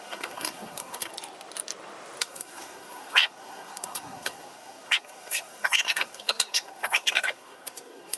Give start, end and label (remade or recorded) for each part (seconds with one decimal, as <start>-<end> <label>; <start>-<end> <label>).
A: 0.0-1.1 remade; 1.1-2.2 recorded; 2.2-8.2 remade